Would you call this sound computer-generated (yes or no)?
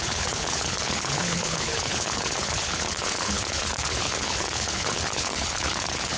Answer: yes